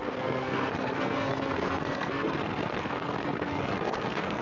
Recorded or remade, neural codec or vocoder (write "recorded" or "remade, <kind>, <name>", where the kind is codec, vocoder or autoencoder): remade, codec, SNAC